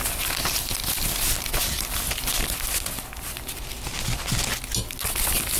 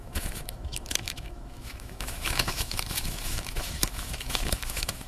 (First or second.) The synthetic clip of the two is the second